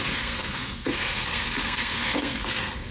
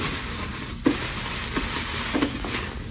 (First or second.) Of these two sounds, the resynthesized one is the first